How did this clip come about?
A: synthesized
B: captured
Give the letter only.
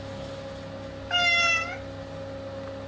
B